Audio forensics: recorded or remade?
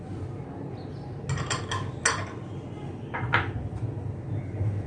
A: recorded